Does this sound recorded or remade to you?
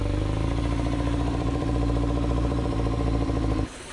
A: remade